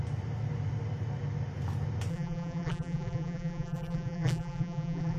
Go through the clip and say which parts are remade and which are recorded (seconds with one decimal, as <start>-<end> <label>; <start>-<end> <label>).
0.0-2.1 recorded; 2.1-5.2 remade